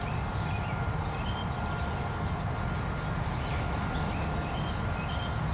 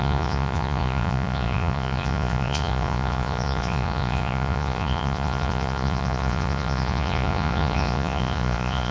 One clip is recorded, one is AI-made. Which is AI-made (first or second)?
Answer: second